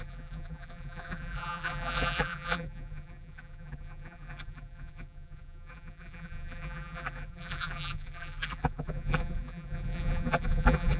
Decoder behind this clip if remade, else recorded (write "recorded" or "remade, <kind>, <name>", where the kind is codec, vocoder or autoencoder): remade, vocoder, BigVGAN v2